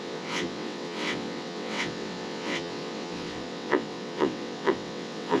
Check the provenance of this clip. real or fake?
fake